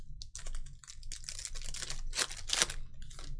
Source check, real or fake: real